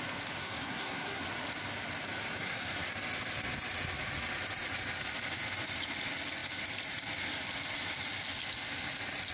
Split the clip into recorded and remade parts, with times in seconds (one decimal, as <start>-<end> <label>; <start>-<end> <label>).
0.0-0.4 recorded; 0.4-1.2 remade; 1.2-2.4 recorded; 2.4-2.9 remade; 2.9-9.3 recorded

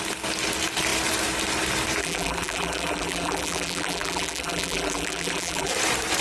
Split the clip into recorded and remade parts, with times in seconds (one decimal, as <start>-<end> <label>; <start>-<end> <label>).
0.0-2.0 recorded; 2.0-5.7 remade; 5.7-6.2 recorded

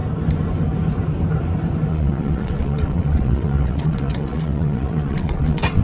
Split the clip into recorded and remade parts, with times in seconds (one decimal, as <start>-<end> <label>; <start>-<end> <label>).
0.0-1.9 recorded; 1.9-5.8 remade

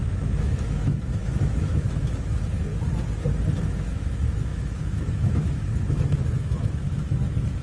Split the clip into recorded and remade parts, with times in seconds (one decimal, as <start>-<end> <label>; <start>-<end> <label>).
0.0-2.7 remade; 2.7-3.6 recorded; 3.6-7.6 remade

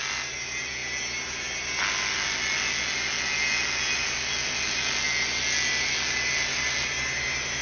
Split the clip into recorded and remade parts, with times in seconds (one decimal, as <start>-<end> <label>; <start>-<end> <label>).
0.0-7.6 recorded

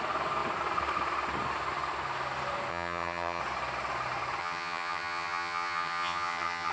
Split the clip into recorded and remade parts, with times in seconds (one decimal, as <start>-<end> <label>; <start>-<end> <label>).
0.0-2.7 recorded; 2.7-3.4 remade; 3.4-4.4 recorded; 4.4-6.7 remade

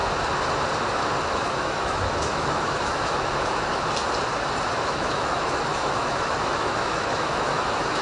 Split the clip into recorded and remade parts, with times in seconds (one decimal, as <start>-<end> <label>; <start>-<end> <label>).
0.0-1.3 recorded; 1.3-3.7 remade; 3.7-4.7 recorded; 4.7-8.0 remade

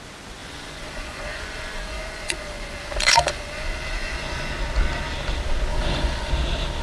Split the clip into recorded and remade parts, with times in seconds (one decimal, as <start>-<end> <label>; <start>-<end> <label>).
0.0-0.4 recorded; 0.4-4.5 remade; 4.5-5.7 recorded; 5.7-6.3 remade; 6.3-6.8 recorded